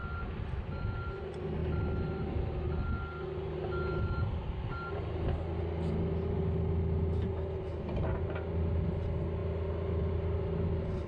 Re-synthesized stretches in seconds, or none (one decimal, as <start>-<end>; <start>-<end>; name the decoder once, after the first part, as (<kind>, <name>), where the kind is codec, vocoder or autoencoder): none